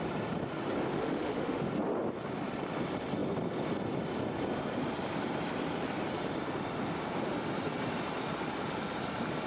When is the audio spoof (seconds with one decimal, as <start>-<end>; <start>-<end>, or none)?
0.9-1.7